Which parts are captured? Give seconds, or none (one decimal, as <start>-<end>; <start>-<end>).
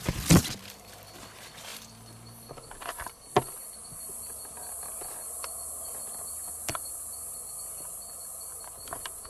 0.0-9.3